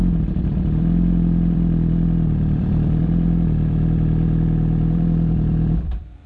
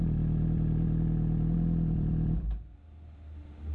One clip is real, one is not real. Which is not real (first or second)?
first